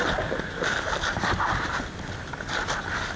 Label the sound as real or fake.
real